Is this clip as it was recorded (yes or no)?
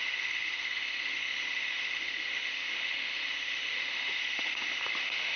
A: no